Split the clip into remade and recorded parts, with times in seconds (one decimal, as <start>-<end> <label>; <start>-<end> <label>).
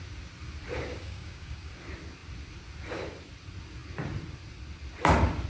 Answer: 0.0-0.9 recorded; 0.9-1.7 remade; 1.7-5.5 recorded